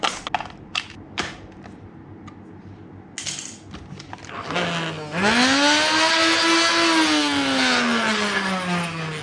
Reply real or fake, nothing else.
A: real